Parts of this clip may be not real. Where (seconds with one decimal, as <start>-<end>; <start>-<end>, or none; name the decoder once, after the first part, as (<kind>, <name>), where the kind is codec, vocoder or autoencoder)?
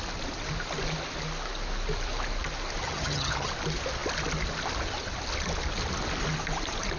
2.8-3.5 (vocoder, HiFi-GAN)